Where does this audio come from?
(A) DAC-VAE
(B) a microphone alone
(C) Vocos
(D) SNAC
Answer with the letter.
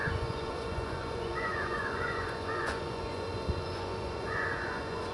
C